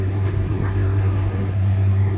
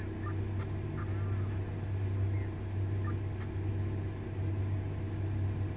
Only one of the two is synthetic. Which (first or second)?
first